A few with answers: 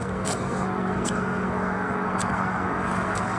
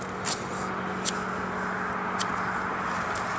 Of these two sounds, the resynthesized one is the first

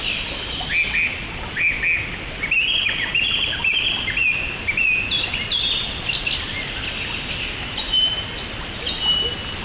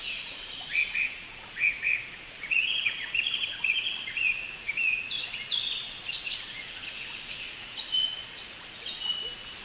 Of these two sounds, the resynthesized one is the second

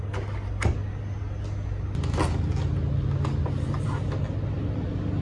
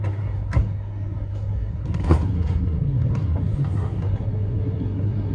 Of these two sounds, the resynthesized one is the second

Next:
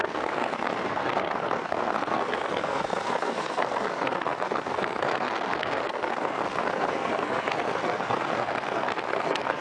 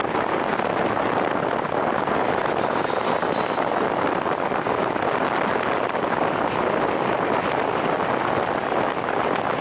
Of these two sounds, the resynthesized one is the first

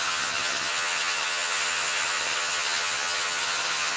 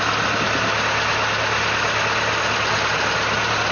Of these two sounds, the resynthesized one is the first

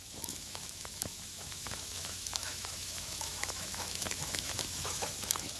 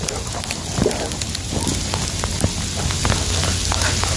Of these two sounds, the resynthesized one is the first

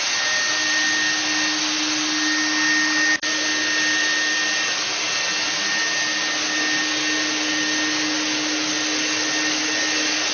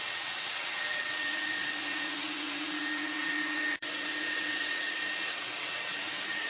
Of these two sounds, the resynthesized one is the second